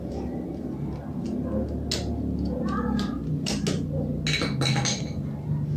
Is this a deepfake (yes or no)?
no